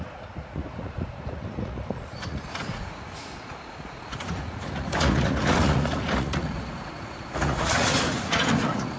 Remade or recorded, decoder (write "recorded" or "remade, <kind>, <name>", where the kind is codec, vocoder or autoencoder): remade, vocoder, Vocos